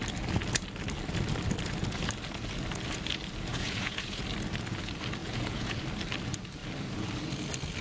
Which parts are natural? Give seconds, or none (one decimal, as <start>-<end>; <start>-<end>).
0.0-3.5; 4.2-5.2; 5.8-7.8